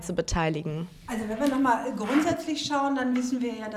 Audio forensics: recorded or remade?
recorded